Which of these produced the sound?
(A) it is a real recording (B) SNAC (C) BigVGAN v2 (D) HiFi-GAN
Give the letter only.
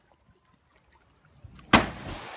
A